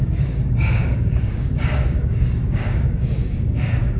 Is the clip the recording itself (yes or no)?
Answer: no